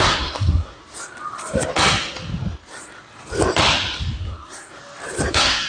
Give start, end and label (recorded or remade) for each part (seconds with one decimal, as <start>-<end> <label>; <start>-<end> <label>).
0.0-0.8 remade; 0.8-4.2 recorded; 4.2-4.7 remade; 4.7-5.3 recorded; 5.3-5.7 remade